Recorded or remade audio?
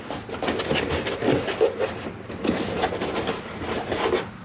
recorded